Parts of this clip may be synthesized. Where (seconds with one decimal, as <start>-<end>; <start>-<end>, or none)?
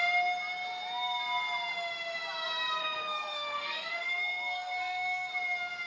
2.8-5.3